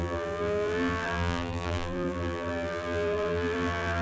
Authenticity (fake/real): fake